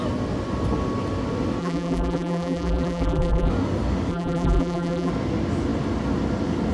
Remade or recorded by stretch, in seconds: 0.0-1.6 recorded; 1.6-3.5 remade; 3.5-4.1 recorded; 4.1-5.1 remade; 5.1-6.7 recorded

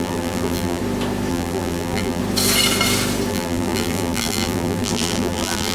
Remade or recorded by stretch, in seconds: 0.0-0.8 remade; 0.8-1.3 recorded; 1.3-2.2 remade; 2.2-3.3 recorded; 3.3-5.7 remade

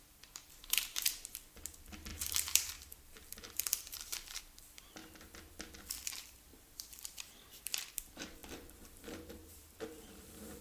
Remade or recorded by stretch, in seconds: 0.0-5.0 remade; 5.0-5.9 recorded; 5.9-10.6 remade

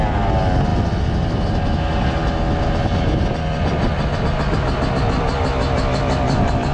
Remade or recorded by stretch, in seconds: 0.0-6.7 recorded

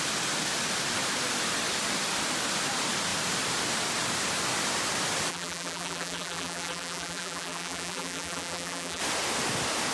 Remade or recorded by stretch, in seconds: 0.0-5.3 recorded; 5.3-9.0 remade; 9.0-9.9 recorded

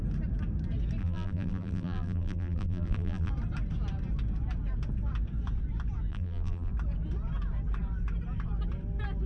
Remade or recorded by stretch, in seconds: 0.0-1.0 recorded; 1.0-3.3 remade; 3.3-6.1 recorded; 6.1-6.7 remade; 6.7-9.3 recorded

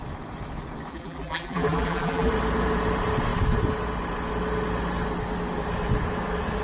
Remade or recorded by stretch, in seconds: 0.0-0.9 recorded; 0.9-2.3 remade; 2.3-6.6 recorded

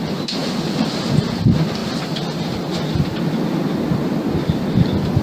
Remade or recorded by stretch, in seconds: 0.0-0.4 recorded; 0.4-1.0 remade; 1.0-5.2 recorded